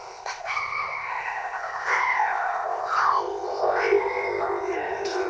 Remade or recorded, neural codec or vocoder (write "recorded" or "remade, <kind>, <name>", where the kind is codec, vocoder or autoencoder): remade, codec, ZipCodec